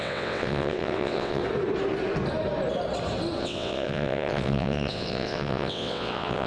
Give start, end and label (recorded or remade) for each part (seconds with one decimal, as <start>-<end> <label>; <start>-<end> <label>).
0.0-1.4 remade; 1.4-3.4 recorded; 3.4-6.5 remade